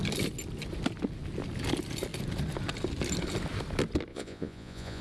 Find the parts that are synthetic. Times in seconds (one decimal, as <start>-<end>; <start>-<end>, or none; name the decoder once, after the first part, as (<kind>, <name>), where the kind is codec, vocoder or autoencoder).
4.1-5.0 (vocoder, Vocos)